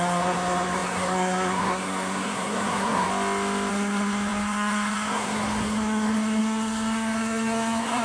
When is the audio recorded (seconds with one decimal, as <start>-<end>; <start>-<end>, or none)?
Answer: 3.1-3.7